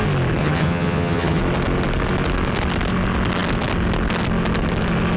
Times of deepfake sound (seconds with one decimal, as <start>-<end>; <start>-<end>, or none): 0.4-1.4